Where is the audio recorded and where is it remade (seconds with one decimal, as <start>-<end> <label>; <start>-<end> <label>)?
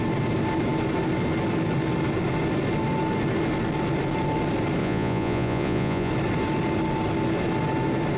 0.0-4.8 recorded; 4.8-6.1 remade; 6.1-8.2 recorded